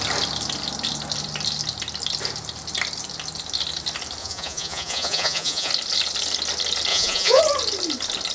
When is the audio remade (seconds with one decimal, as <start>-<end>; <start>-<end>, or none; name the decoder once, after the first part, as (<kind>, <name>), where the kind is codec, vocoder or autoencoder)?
4.2-5.7 (vocoder, Vocos); 6.9-7.4